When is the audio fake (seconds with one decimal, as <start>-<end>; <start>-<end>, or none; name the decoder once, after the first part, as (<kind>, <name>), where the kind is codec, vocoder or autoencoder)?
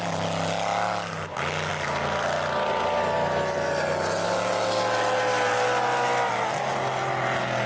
none